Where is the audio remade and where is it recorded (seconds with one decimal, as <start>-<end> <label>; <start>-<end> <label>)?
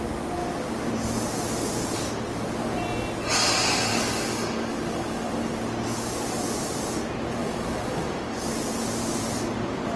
0.0-3.9 recorded; 3.9-5.3 remade; 5.3-7.4 recorded; 7.4-8.5 remade; 8.5-10.0 recorded